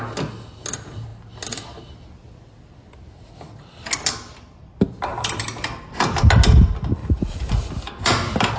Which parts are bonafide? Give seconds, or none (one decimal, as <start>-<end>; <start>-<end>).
0.0-7.0; 7.7-8.6